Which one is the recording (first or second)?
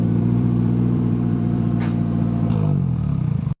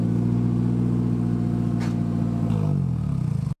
second